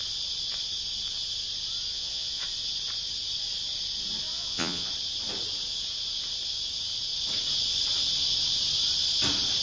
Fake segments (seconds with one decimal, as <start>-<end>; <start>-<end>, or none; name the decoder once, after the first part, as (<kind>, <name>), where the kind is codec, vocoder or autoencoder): 1.9-2.4 (vocoder, Vocos); 4.3-4.9